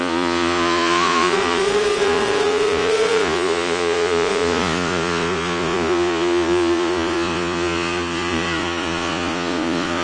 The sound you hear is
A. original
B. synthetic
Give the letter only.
B